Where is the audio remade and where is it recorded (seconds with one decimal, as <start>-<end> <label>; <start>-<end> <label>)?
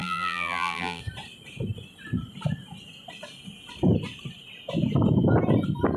0.0-1.0 remade; 1.0-6.0 recorded